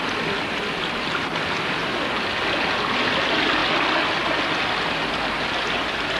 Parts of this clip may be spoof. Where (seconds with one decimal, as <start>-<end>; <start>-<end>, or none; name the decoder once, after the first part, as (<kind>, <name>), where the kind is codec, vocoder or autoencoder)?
0.0-1.8 (vocoder, BigVGAN v2); 2.7-3.6; 4.8-6.2